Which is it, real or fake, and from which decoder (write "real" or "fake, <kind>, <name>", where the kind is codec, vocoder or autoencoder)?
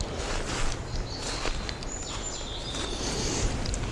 real